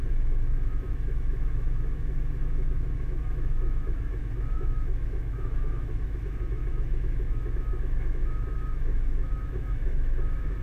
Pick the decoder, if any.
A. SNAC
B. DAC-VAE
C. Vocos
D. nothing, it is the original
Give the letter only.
B